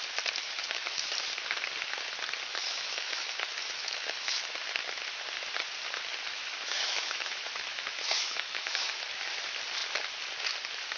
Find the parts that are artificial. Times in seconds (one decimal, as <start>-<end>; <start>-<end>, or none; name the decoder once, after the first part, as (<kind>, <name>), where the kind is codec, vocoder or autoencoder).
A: 0.4-1.1 (autoencoder, DAC-VAE); 2.5-4.5; 6.4-9.0